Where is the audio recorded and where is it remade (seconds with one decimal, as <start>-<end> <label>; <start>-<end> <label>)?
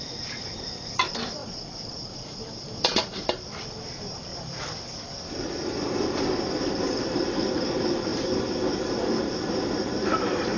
0.0-1.4 remade; 1.4-2.0 recorded; 2.0-4.3 remade; 4.3-6.7 recorded; 6.7-8.1 remade; 8.1-8.7 recorded; 8.7-10.6 remade